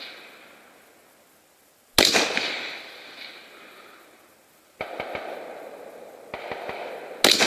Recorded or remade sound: recorded